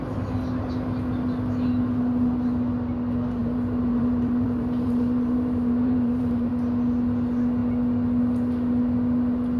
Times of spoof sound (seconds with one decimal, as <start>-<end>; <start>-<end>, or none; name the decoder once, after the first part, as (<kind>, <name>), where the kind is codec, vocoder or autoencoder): 3.4-6.5 (vocoder, BigVGAN v2)